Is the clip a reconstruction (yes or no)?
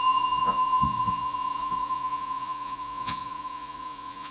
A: yes